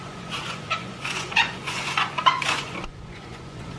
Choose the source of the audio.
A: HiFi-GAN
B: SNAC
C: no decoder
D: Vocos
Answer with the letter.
D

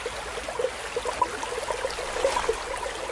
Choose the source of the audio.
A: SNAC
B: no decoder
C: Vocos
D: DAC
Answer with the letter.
B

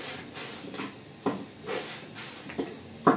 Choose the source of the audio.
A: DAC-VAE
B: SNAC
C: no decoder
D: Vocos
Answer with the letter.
C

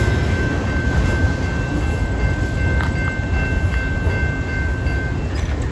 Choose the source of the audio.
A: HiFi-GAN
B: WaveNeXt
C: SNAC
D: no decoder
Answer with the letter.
D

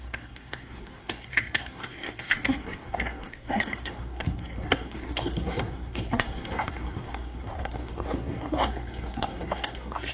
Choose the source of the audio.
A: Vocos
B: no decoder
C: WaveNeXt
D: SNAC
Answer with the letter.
D